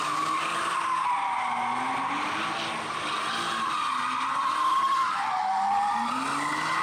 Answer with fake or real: real